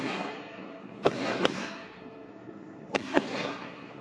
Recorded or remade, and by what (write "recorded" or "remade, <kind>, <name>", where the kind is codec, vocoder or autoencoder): remade, codec, SNAC